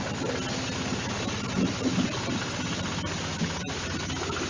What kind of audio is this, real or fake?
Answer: real